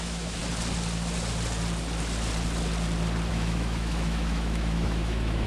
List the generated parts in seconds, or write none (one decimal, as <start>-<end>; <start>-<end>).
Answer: 0.0-0.4; 3.3-5.5